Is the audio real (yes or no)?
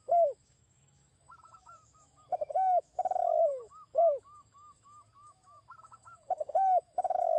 no